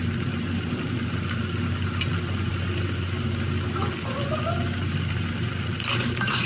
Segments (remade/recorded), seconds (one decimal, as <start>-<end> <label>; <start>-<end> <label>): 0.0-6.5 recorded